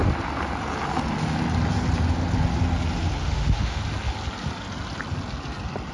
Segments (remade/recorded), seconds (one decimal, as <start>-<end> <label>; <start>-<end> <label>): 0.0-3.2 recorded; 3.2-3.8 remade; 3.8-5.9 recorded